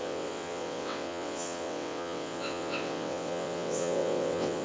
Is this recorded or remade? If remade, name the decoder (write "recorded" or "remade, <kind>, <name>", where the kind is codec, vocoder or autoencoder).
remade, vocoder, WaveNeXt